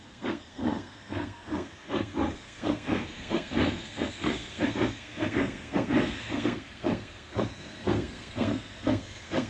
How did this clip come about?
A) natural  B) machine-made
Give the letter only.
B